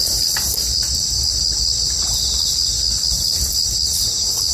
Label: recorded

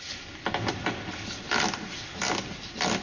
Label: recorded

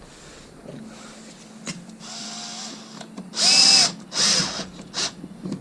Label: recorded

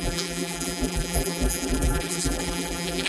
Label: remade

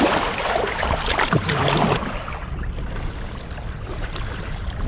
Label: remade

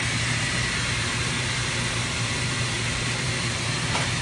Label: remade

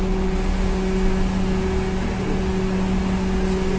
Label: recorded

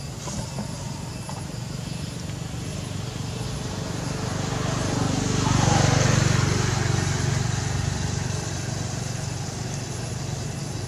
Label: recorded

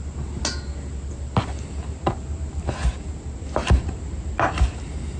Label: recorded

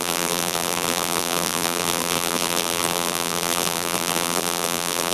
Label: remade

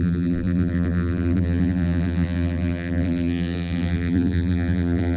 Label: remade